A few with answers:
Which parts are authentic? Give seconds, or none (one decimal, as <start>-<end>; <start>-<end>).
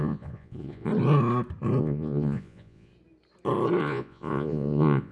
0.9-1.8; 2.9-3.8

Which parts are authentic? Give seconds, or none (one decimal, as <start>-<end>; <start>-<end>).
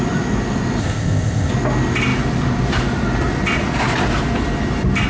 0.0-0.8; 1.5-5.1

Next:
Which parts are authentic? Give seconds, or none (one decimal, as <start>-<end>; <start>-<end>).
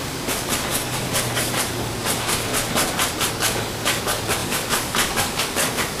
2.5-3.3